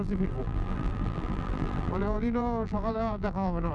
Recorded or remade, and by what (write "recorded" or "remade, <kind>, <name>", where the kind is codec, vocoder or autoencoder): remade, vocoder, BigVGAN v2